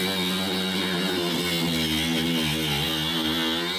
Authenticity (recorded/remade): recorded